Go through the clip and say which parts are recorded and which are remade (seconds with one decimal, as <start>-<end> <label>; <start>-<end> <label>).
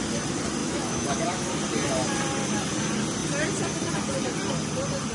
0.0-0.6 recorded; 0.6-1.5 remade; 1.5-5.1 recorded